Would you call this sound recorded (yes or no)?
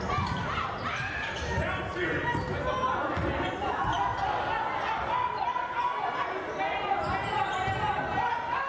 yes